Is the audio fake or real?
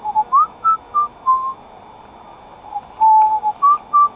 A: real